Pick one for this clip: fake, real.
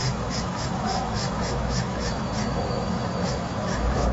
fake